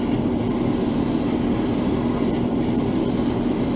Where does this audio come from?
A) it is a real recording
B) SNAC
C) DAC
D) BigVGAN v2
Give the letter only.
D